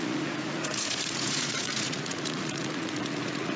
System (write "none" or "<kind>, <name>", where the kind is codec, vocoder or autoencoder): vocoder, Vocos